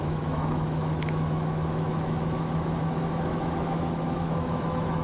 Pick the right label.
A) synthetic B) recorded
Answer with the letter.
A